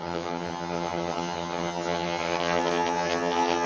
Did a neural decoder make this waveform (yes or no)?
yes